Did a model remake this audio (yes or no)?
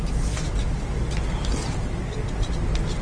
no